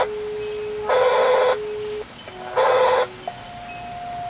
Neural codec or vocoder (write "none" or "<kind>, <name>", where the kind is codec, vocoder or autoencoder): none